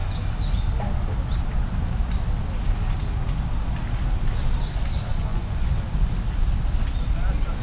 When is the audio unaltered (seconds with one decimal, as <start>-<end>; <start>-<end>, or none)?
0.0-5.1; 5.7-7.6